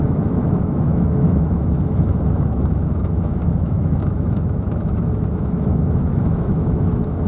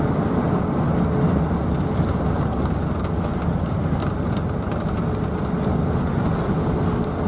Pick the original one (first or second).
second